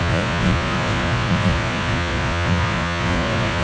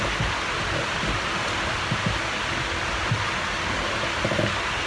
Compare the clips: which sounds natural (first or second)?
second